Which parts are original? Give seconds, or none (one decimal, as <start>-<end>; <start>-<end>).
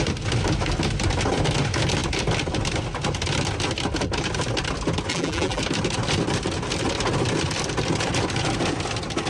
0.0-5.1; 5.6-9.3